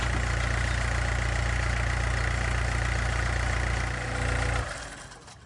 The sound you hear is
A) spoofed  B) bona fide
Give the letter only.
B